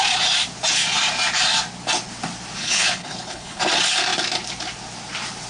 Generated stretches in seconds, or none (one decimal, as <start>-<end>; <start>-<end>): 2.6-3.6